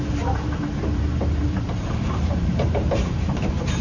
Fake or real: fake